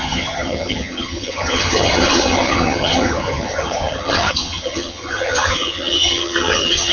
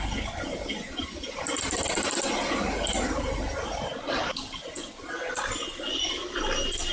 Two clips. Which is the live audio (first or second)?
second